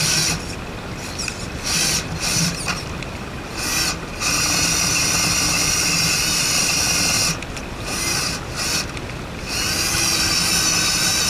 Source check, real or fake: real